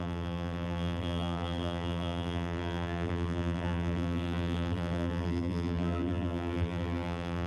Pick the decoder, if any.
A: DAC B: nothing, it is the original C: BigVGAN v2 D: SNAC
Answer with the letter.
C